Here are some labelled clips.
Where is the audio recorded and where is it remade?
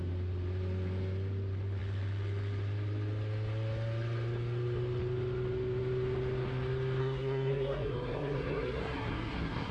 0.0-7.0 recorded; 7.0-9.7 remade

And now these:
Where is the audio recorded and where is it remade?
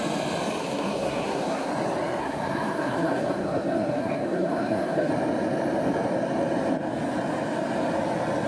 0.0-0.6 recorded; 0.6-1.7 remade; 1.7-2.2 recorded; 2.2-5.1 remade; 5.1-8.5 recorded